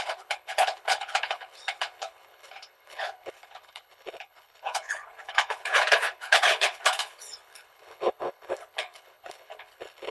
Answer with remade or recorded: remade